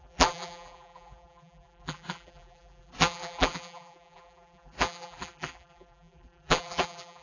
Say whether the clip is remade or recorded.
remade